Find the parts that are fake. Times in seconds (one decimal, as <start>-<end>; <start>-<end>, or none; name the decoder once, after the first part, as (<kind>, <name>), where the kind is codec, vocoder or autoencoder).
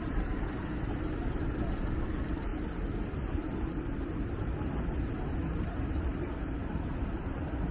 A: none